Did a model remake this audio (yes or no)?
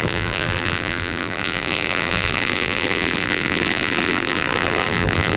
yes